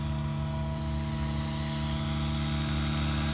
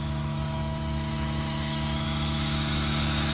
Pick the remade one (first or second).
second